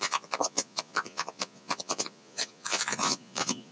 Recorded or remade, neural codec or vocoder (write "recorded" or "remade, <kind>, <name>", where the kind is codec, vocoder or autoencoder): remade, vocoder, Vocos